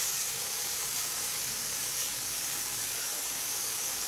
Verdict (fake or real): fake